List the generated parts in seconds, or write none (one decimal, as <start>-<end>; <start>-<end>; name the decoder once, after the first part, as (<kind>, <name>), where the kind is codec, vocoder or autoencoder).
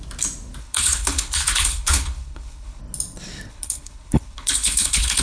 0.6-2.8 (codec, HILCodec); 3.5-5.2